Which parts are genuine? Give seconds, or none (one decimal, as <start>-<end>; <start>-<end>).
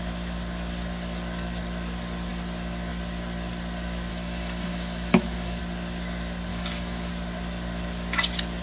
0.0-4.1; 5.6-6.5; 7.1-8.6